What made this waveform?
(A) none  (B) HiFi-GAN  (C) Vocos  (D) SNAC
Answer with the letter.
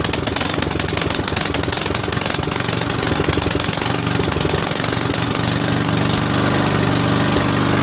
A